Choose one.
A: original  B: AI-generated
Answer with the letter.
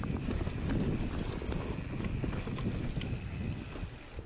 A